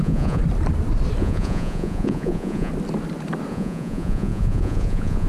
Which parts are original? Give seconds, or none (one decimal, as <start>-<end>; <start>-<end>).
0.4-1.2; 2.7-3.5